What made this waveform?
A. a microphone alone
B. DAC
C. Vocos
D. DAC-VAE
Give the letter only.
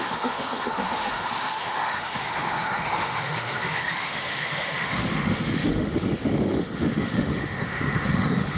D